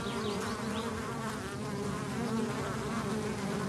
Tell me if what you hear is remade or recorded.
recorded